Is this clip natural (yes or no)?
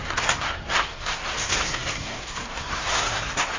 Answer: no